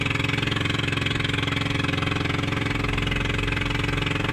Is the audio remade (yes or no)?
no